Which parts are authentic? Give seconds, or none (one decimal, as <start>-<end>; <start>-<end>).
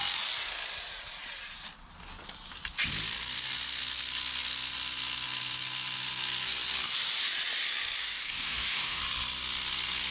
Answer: 0.0-8.0; 9.0-10.1